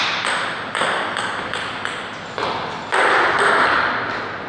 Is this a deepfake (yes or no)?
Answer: no